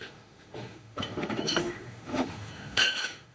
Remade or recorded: remade